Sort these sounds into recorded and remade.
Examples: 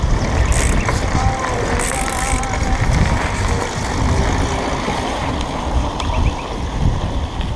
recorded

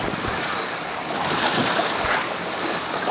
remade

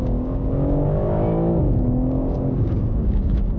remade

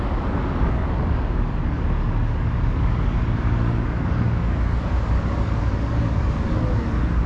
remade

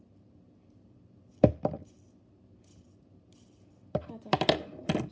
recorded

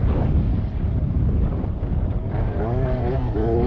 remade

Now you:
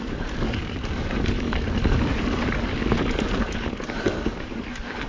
remade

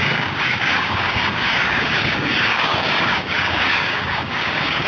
remade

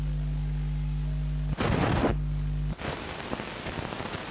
recorded